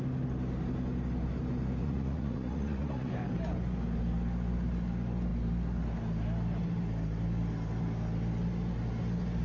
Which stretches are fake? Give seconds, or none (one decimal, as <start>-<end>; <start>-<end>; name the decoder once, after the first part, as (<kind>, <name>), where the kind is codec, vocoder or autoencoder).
1.8-3.1 (vocoder, Vocos)